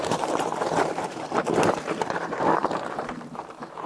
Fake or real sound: fake